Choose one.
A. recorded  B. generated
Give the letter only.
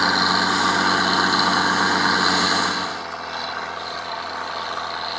B